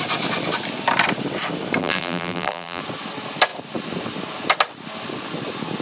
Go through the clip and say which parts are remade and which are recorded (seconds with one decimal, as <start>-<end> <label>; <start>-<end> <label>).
0.0-1.8 recorded; 1.8-2.8 remade; 2.8-5.8 recorded